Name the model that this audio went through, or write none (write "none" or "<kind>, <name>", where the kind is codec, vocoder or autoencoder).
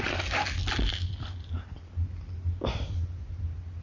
none